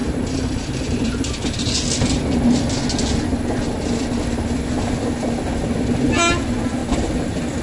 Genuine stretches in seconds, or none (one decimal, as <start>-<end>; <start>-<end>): 1.7-7.6